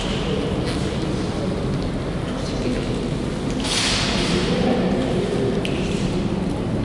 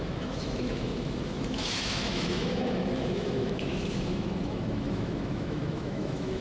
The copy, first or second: second